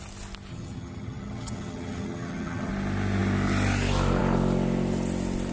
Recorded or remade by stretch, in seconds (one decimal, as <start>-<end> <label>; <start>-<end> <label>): 0.0-0.5 recorded; 0.5-2.7 remade; 2.7-5.5 recorded